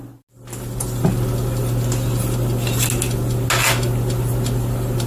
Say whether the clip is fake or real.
real